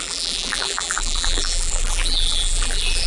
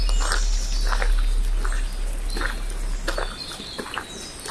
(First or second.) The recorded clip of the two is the second